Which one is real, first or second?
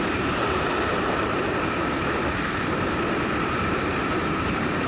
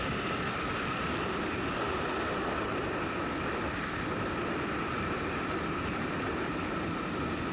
second